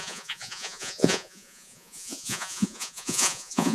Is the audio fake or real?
fake